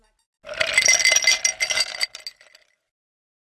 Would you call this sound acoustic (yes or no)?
yes